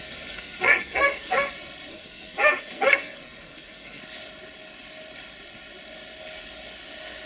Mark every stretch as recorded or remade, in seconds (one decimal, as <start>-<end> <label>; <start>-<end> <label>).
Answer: 0.0-1.5 remade; 1.5-1.9 recorded; 1.9-4.0 remade; 4.0-7.3 recorded